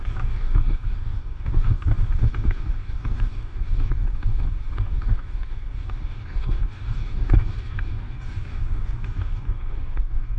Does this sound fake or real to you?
fake